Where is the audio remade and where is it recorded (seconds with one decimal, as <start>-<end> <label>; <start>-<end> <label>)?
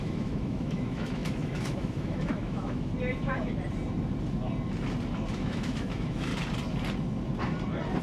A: 0.0-2.9 remade; 2.9-5.3 recorded; 5.3-6.3 remade; 6.3-8.0 recorded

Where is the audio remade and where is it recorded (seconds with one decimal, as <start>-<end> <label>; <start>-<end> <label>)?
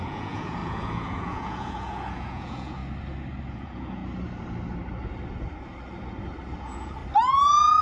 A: 0.0-2.8 remade; 2.8-3.5 recorded; 3.5-4.0 remade; 4.0-6.6 recorded; 6.6-7.0 remade; 7.0-7.8 recorded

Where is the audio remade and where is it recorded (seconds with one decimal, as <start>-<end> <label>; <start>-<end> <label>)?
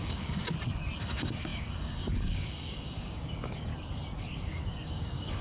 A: 0.0-0.4 remade; 0.4-1.0 recorded; 1.0-3.7 remade; 3.7-4.2 recorded; 4.2-5.4 remade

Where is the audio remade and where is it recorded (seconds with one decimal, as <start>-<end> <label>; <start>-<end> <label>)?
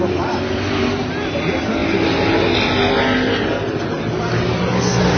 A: 0.0-5.2 recorded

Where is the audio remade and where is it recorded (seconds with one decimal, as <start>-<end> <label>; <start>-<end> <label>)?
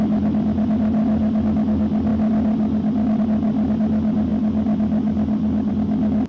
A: 0.0-6.3 recorded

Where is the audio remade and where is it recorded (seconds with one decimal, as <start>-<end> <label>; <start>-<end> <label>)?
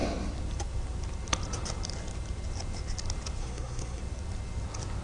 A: 0.0-3.4 recorded; 3.4-4.0 remade; 4.0-5.0 recorded